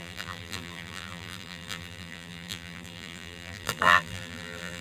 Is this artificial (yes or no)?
yes